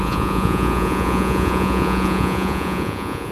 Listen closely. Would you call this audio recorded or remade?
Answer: remade